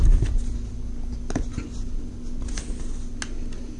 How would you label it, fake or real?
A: real